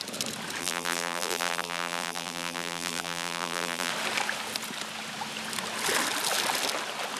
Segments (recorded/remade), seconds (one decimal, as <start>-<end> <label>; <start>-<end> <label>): 0.0-0.6 recorded; 0.6-3.9 remade; 3.9-7.2 recorded